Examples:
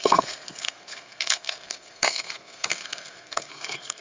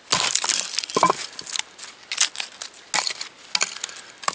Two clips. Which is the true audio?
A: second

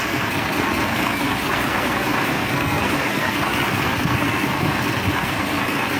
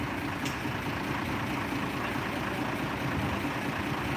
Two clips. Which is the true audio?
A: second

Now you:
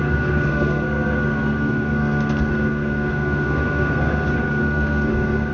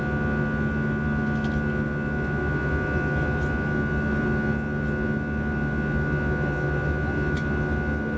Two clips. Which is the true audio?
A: second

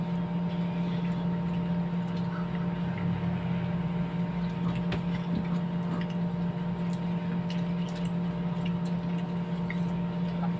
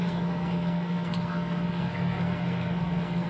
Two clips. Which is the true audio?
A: first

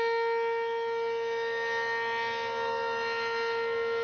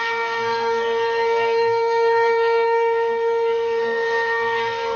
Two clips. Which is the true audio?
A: first